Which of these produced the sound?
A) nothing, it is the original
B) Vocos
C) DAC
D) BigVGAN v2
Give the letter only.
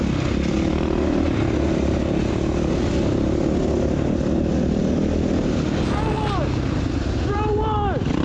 A